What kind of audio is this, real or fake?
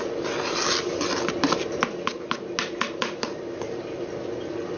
real